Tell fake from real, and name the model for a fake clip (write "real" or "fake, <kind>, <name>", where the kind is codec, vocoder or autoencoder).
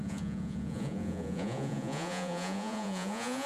fake, vocoder, Vocos